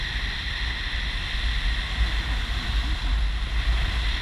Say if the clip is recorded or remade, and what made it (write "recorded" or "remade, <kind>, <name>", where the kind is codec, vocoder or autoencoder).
recorded